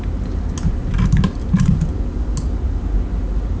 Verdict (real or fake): real